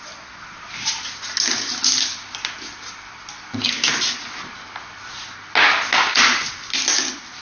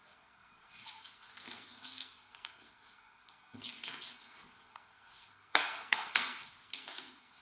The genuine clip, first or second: first